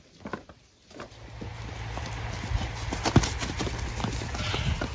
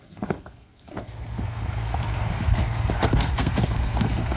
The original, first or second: first